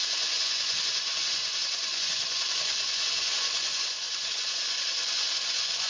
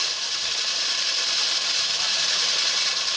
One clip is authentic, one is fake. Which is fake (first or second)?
first